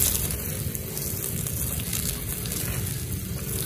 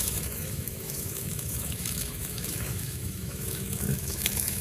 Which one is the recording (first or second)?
first